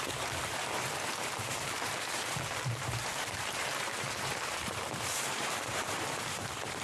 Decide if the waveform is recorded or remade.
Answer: remade